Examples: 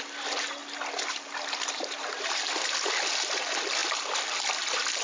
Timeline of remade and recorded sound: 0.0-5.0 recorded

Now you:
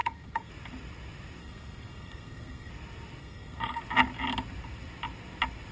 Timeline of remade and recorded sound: 0.0-0.5 remade; 0.5-1.4 recorded; 1.4-2.7 remade; 2.7-3.2 recorded; 3.2-3.8 remade; 3.8-5.7 recorded

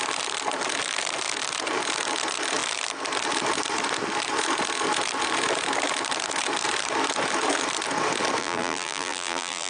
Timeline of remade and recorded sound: 0.0-8.4 recorded; 8.4-9.7 remade

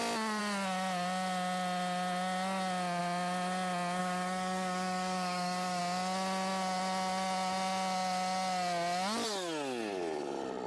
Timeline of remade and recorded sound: 0.0-4.0 recorded; 4.0-5.8 remade; 5.8-10.7 recorded